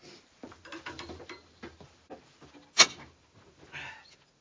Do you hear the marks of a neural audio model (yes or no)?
no